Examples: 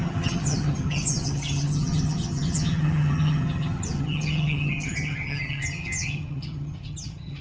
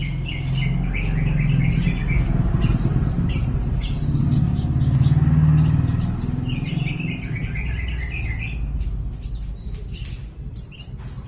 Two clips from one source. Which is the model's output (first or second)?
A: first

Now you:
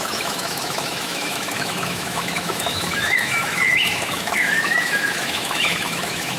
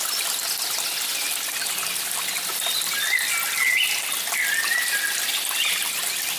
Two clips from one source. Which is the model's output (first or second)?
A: first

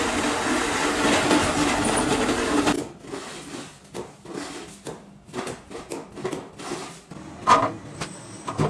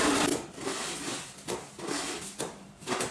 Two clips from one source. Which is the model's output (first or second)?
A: second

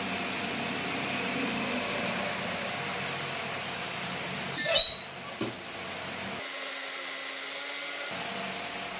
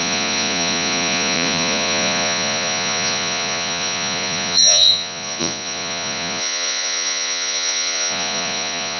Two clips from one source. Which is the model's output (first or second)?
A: second